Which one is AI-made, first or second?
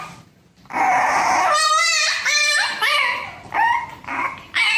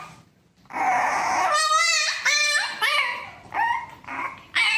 first